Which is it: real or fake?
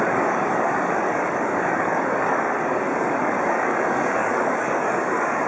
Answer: fake